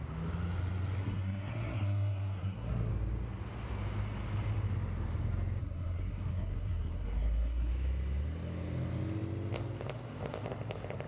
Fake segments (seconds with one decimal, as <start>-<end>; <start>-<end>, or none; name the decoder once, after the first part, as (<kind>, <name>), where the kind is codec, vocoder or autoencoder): 1.0-2.9 (codec, SNAC); 5.6-7.7